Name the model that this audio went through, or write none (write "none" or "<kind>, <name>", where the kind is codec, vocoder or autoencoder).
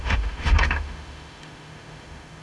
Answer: autoencoder, DAC-VAE